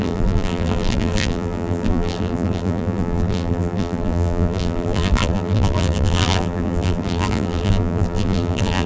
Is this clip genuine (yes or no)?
no